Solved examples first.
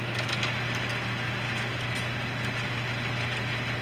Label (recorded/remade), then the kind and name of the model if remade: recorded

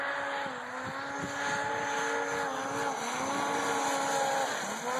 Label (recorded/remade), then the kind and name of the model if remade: recorded